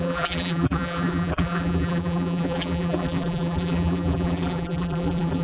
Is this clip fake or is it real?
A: fake